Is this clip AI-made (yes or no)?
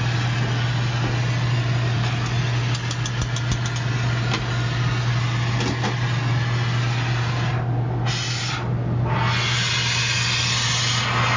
no